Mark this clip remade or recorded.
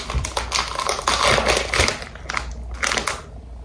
recorded